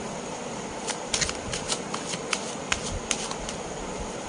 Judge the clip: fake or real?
fake